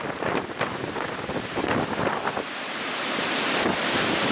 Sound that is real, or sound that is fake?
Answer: real